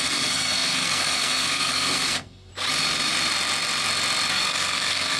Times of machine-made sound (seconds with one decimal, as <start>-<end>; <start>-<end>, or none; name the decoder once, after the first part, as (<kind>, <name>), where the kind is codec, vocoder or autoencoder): 0.0-2.5 (codec, SNAC); 4.3-5.2